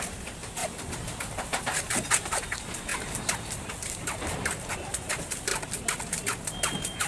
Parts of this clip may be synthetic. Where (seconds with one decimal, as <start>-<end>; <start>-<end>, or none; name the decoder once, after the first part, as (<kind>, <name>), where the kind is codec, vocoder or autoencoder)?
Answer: 0.0-5.5 (vocoder, BigVGAN v2); 6.4-7.1